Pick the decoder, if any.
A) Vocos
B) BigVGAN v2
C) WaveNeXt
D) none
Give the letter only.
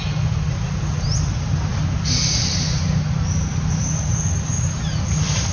D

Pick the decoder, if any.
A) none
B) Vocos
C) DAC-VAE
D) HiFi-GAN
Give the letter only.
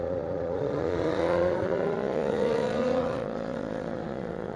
B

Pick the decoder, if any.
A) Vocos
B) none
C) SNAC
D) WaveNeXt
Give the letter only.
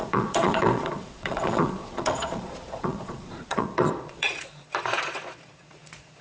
A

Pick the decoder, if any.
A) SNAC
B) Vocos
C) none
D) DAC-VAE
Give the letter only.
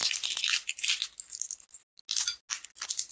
C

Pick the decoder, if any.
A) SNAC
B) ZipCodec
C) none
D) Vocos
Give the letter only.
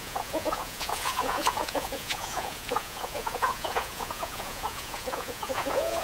D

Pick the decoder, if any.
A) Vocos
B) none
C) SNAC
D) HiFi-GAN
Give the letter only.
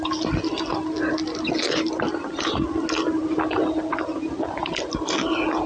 B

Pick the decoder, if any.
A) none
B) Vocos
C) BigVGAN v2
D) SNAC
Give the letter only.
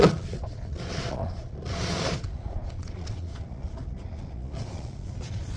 B